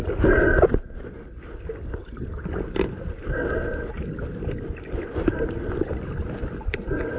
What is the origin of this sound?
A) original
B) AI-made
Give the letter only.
A